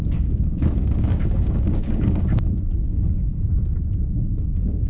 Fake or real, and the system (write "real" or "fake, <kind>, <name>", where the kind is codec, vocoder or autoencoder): fake, codec, DAC